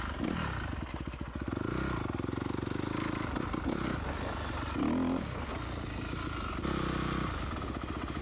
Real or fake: real